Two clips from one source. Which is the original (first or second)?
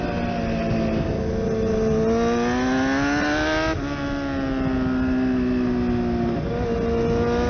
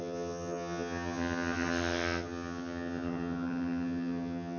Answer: first